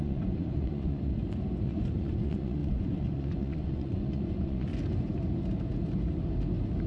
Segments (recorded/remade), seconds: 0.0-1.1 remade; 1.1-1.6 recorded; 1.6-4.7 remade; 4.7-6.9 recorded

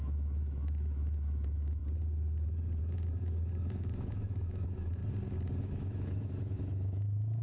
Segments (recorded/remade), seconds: 0.0-1.8 remade; 1.8-2.8 recorded; 2.8-5.0 remade; 5.0-5.6 recorded; 5.6-7.4 remade

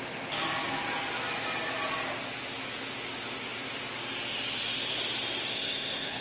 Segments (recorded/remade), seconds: 0.0-5.5 recorded; 5.5-6.2 remade

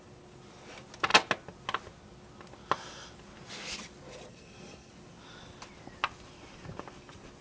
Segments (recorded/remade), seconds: 0.0-4.3 recorded; 4.3-4.9 remade; 4.9-7.4 recorded

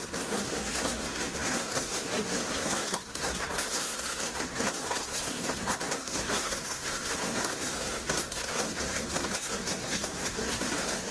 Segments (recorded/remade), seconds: 0.0-11.1 remade